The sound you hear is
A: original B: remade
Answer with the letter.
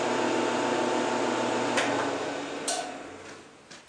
A